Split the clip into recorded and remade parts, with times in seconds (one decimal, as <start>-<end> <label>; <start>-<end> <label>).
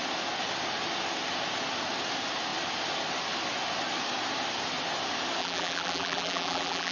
0.0-5.4 recorded; 5.4-6.9 remade